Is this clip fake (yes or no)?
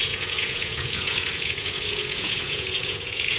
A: yes